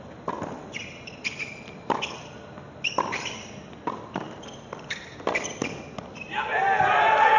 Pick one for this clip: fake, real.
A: real